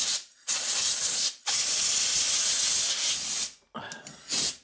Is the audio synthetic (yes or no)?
no